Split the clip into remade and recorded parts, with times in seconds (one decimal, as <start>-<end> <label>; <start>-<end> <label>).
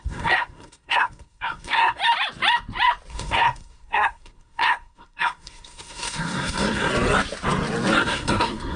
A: 0.0-2.0 remade; 2.0-3.1 recorded; 3.1-6.9 remade; 6.9-8.0 recorded; 8.0-8.8 remade